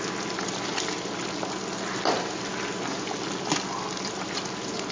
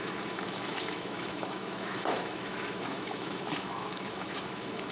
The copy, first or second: second